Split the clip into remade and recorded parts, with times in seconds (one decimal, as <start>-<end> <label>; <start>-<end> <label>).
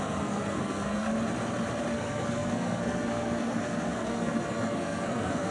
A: 0.0-1.1 remade; 1.1-1.9 recorded; 1.9-5.5 remade